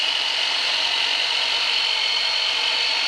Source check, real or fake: real